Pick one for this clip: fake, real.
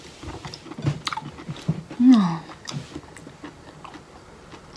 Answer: real